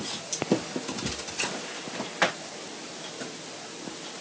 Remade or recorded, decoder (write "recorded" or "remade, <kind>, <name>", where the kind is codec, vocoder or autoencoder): recorded